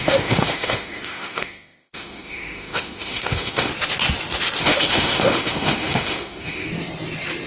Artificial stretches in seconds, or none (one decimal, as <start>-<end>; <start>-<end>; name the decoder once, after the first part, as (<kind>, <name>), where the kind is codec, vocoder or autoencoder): 0.0-3.7 (autoencoder, DAC-VAE); 4.6-6.7